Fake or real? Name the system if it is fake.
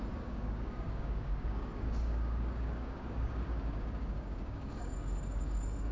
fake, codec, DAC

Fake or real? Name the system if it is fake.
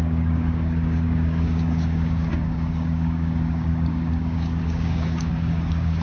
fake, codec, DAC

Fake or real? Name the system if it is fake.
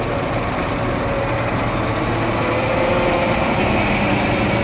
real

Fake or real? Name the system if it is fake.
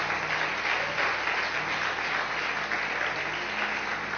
real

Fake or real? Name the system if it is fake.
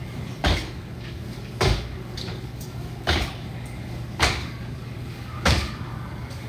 fake, codec, DAC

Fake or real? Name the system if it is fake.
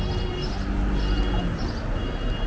real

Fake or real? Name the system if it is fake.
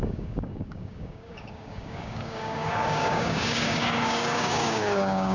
fake, codec, DAC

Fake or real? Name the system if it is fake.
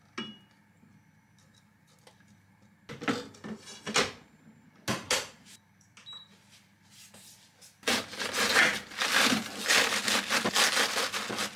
real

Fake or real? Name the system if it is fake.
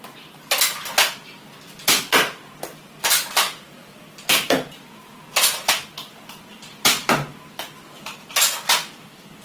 real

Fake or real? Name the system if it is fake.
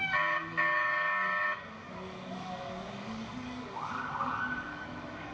fake, codec, DAC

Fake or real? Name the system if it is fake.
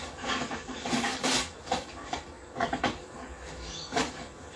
fake, codec, DAC